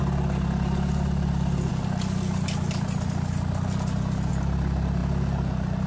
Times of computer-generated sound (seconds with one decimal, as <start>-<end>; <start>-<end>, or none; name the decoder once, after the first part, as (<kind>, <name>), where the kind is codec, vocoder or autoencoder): none